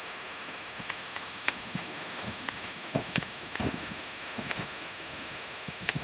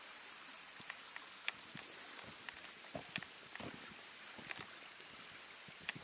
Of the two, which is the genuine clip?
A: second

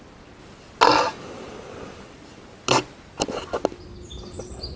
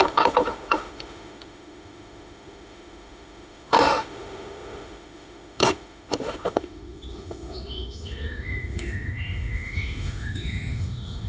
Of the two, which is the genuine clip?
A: first